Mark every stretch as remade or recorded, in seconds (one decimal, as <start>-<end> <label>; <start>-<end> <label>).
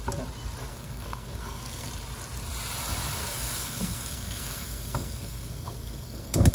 0.0-0.7 recorded; 0.7-1.9 remade; 1.9-3.2 recorded; 3.2-6.5 remade